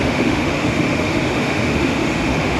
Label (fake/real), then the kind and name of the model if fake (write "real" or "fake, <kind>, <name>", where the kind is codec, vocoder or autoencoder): fake, autoencoder, DAC-VAE